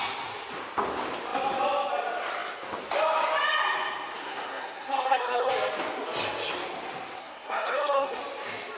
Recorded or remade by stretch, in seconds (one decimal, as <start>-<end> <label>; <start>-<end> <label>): 0.0-4.2 recorded; 4.2-5.5 remade; 5.5-7.2 recorded; 7.2-8.2 remade; 8.2-8.8 recorded